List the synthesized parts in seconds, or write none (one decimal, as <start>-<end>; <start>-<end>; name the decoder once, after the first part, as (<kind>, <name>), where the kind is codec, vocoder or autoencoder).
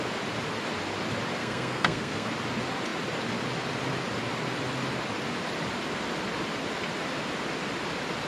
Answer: 1.4-2.3 (codec, SNAC)